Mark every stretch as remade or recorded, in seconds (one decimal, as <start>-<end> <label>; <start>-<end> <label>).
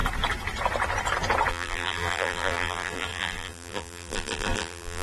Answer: 0.0-1.5 recorded; 1.5-5.0 remade